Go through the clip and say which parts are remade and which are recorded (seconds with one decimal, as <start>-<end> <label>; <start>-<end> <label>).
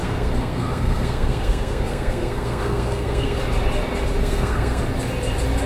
0.0-3.4 remade; 3.4-4.2 recorded; 4.2-4.8 remade; 4.8-5.7 recorded